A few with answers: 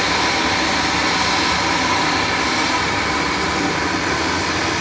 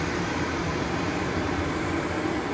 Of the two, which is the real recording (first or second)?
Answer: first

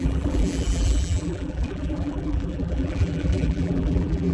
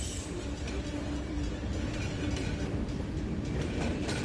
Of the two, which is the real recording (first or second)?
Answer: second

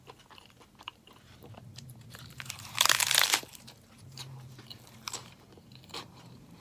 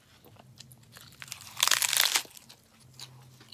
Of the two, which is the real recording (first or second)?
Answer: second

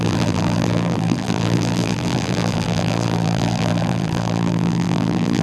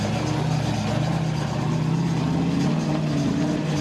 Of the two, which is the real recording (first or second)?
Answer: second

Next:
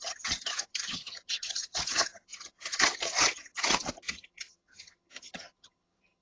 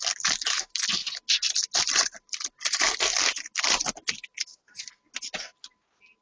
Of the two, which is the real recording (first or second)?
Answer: second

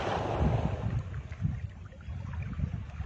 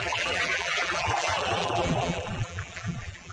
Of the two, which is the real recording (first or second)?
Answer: first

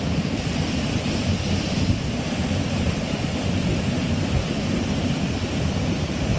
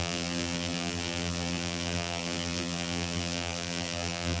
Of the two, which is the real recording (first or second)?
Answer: first